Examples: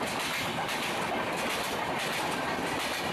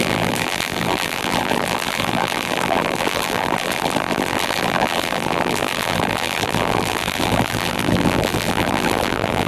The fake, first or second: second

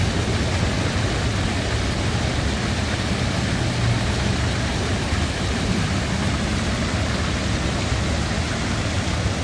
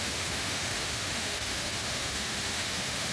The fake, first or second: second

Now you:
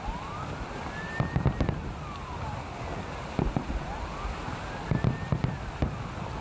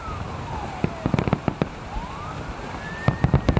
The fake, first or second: second